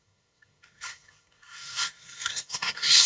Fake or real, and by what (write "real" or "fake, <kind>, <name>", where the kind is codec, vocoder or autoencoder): fake, codec, SNAC